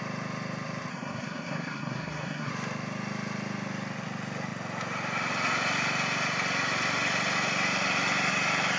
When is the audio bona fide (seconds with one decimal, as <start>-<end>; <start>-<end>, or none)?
0.0-0.9; 2.5-8.8